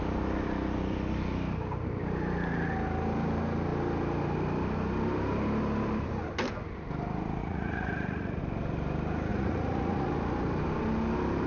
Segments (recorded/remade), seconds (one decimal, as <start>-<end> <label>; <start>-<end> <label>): 0.0-7.4 recorded; 7.4-8.4 remade; 8.4-9.3 recorded; 9.3-10.1 remade; 10.1-11.5 recorded